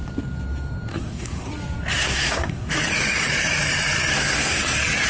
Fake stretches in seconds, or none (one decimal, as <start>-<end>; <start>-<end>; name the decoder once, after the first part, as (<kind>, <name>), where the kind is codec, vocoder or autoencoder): 0.9-1.5 (codec, SNAC); 2.0-2.7; 4.1-4.6